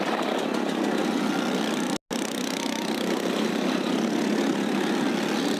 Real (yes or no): yes